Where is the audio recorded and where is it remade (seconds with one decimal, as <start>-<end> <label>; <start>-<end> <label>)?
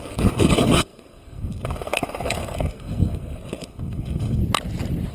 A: 0.0-4.4 remade; 4.4-5.1 recorded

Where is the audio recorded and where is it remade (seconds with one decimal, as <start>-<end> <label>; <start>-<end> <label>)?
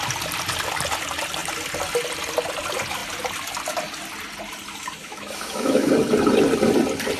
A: 0.0-5.0 recorded; 5.0-5.9 remade; 5.9-7.2 recorded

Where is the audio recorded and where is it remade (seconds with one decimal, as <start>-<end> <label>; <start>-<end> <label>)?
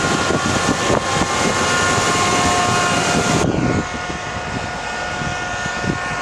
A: 0.0-6.2 recorded